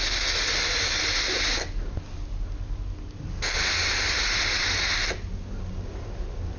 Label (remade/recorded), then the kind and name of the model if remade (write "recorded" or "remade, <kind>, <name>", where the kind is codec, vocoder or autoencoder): recorded